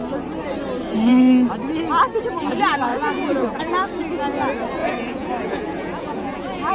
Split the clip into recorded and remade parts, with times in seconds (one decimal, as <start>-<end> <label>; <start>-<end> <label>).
0.0-2.9 recorded; 2.9-3.6 remade; 3.6-4.8 recorded; 4.8-6.7 remade